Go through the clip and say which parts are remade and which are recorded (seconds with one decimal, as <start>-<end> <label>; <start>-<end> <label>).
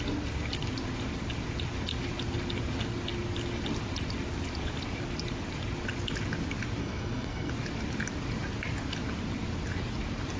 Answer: 0.0-6.8 recorded; 6.8-7.5 remade; 7.5-10.4 recorded